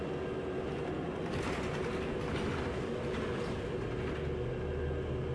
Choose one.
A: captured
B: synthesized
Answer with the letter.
A